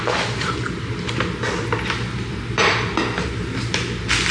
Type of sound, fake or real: real